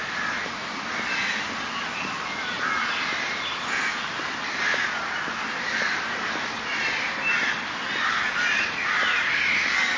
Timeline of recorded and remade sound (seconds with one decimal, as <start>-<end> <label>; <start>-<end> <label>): 0.0-10.0 recorded